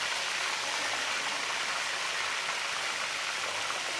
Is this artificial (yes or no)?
no